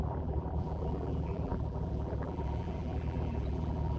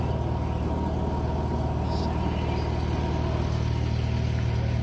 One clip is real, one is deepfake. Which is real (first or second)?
second